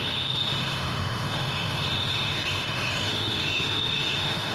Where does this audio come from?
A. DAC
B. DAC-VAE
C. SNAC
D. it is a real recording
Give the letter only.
B